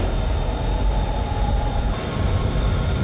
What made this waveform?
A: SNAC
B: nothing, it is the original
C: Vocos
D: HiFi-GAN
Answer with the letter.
B